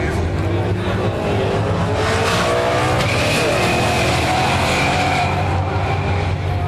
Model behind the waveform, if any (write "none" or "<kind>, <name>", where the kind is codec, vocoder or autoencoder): none